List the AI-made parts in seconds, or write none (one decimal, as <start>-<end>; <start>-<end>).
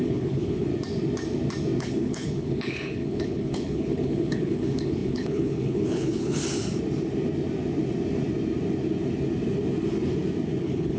0.0-0.7; 1.8-6.4; 10.6-11.0